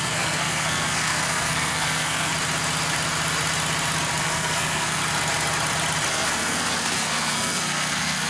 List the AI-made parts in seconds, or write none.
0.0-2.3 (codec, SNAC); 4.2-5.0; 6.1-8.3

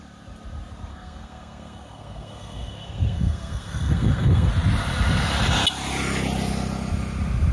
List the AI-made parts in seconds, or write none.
0.9-4.5 (codec, SNAC)

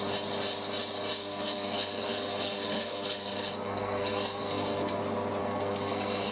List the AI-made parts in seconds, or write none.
1.2-5.0 (codec, SNAC); 5.4-6.3

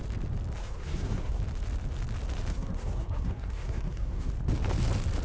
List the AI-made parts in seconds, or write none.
0.6-1.4 (codec, SNAC); 2.5-4.3